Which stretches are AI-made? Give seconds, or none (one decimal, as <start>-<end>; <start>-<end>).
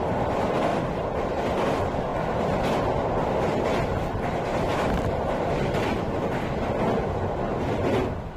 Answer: 0.7-1.5; 4.7-5.9